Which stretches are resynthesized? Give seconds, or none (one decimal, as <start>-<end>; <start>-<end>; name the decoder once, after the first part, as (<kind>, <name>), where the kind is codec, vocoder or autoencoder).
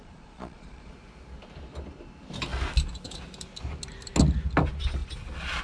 0.0-0.9 (vocoder, Vocos)